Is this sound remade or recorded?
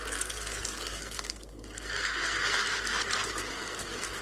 remade